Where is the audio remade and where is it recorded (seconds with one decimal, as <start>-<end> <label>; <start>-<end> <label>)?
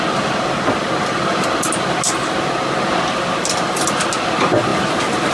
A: 0.0-5.3 recorded